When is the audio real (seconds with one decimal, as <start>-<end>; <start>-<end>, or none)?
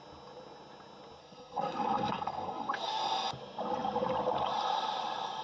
0.0-1.2; 3.0-5.4